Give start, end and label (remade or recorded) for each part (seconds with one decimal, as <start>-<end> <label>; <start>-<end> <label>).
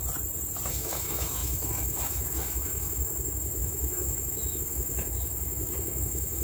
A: 0.0-0.7 recorded; 0.7-6.4 remade